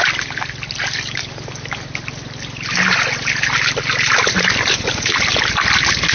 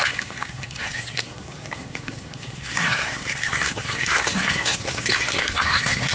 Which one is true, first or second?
first